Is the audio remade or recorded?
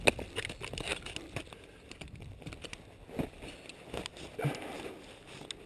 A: recorded